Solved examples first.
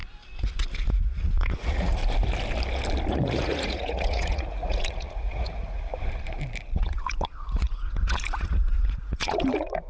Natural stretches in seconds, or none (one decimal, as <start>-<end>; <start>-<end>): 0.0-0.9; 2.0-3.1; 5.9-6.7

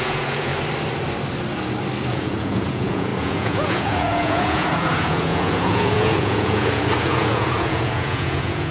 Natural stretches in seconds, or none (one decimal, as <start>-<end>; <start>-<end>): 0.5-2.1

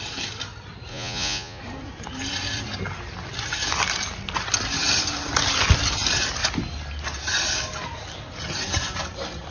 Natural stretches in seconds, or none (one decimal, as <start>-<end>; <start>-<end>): 0.0-0.9; 1.6-9.5